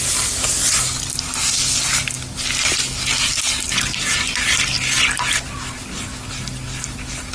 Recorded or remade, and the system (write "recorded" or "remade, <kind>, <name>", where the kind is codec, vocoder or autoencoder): recorded